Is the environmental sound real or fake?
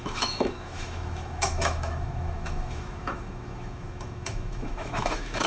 fake